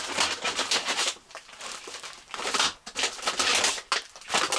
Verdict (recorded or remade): recorded